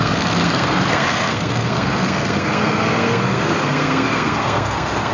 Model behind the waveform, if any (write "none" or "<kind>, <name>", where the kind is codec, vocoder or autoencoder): codec, SNAC